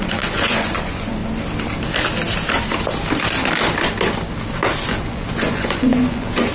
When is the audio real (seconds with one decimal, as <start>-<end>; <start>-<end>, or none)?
1.2-5.1